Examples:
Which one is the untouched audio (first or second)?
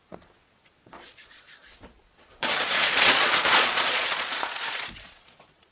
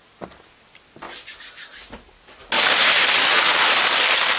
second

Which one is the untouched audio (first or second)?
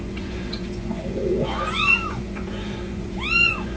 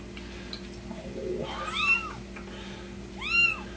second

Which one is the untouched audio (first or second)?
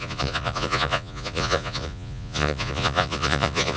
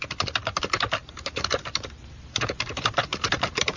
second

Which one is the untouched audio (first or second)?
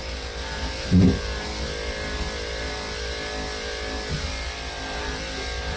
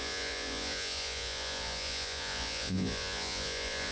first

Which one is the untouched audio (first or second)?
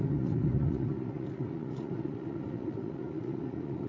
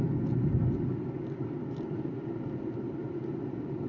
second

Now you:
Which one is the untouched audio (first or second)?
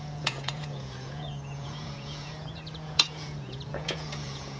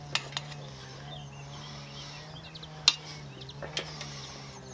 second